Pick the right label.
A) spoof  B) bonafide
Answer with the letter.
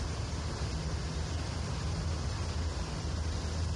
B